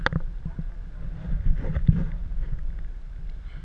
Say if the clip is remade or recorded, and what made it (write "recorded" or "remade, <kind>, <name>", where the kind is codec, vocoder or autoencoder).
recorded